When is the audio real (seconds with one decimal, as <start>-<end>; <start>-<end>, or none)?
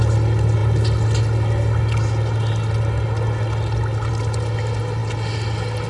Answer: 0.0-5.9